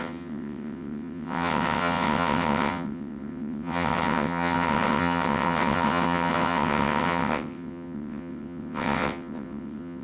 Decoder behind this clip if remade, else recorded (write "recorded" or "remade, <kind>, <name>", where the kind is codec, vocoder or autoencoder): remade, vocoder, WaveNeXt